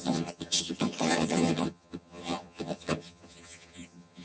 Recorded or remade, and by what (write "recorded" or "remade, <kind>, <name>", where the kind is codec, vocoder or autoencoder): remade, vocoder, HiFi-GAN